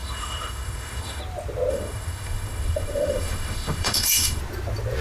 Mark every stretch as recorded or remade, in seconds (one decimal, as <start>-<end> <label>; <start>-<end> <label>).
0.0-1.2 remade; 1.2-1.7 recorded; 1.7-4.4 remade; 4.4-5.0 recorded